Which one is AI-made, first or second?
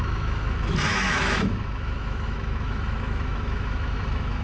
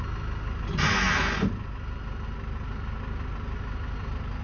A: first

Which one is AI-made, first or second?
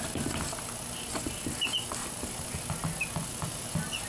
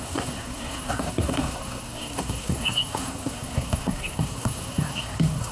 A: second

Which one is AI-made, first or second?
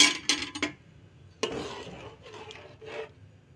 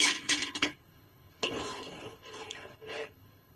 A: second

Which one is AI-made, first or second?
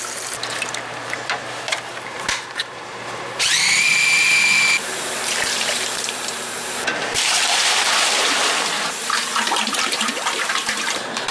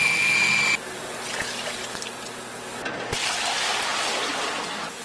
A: first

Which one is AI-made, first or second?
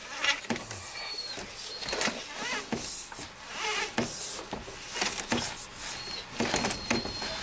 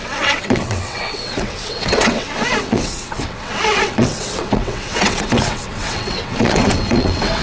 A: second